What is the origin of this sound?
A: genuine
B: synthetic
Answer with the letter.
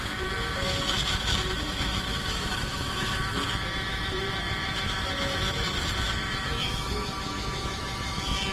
B